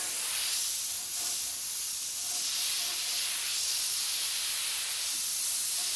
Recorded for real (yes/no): yes